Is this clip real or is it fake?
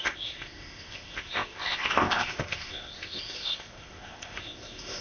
fake